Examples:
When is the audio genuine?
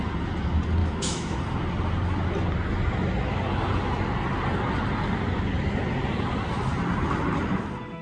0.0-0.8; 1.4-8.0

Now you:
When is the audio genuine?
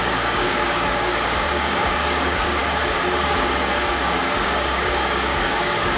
none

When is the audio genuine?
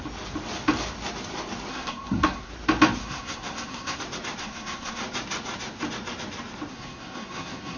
0.0-1.7; 2.5-3.0; 4.0-4.4; 5.0-6.7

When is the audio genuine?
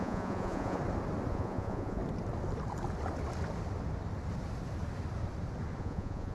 0.8-1.3; 2.0-5.8